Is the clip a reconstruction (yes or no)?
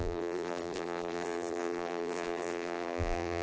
yes